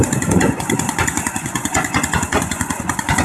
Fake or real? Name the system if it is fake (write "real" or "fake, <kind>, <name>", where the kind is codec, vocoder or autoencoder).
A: fake, vocoder, Vocos